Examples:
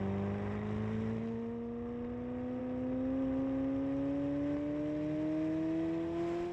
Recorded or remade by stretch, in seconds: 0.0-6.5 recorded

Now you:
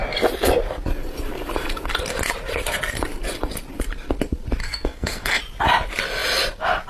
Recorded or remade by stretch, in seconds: 0.0-4.6 recorded; 4.6-5.4 remade; 5.4-6.9 recorded